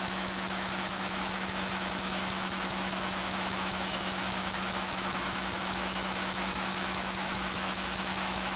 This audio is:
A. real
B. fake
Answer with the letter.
B